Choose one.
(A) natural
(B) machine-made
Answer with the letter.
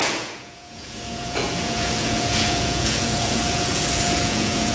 B